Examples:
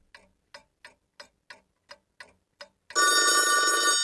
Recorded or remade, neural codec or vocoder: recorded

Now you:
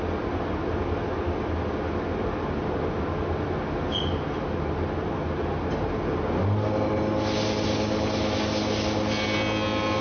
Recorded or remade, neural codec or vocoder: recorded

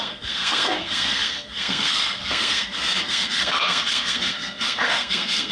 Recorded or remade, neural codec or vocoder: remade, codec, SNAC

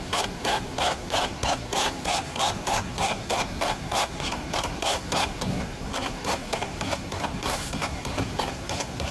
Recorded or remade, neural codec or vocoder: remade, codec, SNAC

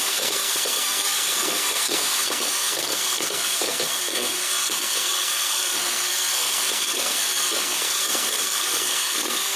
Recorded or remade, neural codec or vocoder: remade, codec, SNAC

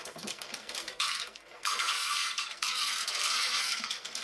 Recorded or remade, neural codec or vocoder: remade, codec, SNAC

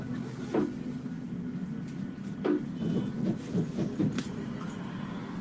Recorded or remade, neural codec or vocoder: recorded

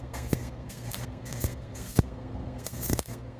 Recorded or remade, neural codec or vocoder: remade, codec, SNAC